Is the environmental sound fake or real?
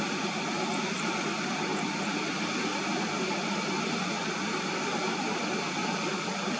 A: real